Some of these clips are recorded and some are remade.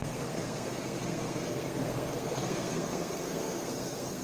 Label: remade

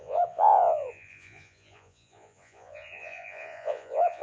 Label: remade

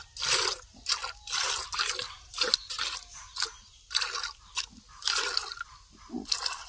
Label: recorded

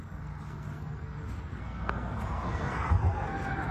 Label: remade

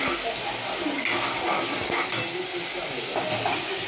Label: recorded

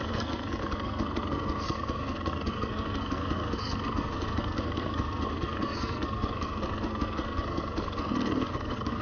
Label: remade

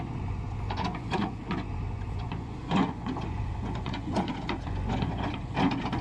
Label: remade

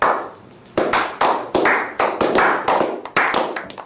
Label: recorded